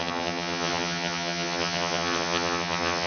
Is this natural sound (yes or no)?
no